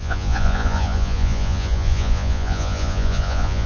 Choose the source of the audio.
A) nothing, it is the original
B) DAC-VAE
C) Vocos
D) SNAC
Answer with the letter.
C